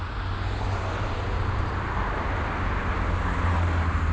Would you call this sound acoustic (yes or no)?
yes